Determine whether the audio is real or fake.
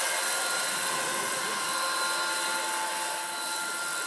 real